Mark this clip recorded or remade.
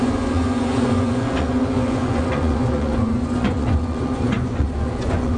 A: remade